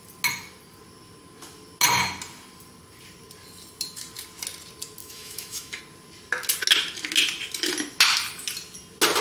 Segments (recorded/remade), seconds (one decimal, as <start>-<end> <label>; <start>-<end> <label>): 0.0-5.0 recorded; 5.0-5.8 remade; 5.8-9.2 recorded